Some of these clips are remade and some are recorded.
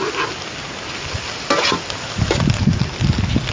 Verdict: recorded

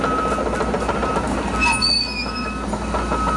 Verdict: recorded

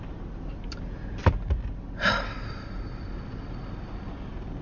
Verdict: recorded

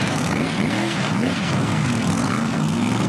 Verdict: remade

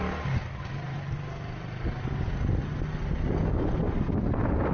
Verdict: recorded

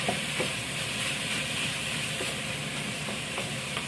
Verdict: remade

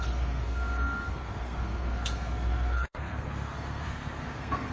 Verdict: remade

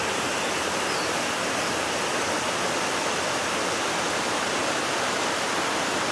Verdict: recorded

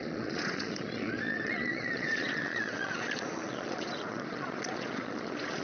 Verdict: remade